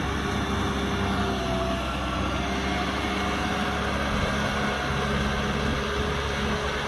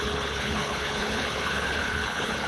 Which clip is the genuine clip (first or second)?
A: first